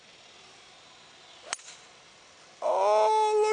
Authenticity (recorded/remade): recorded